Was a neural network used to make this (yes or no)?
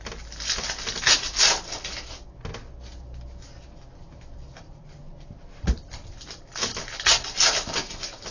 no